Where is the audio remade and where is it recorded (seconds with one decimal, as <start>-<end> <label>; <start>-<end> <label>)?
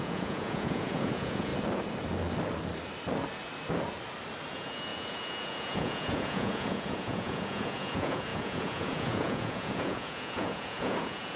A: 0.0-1.5 remade; 1.5-4.5 recorded; 4.5-11.4 remade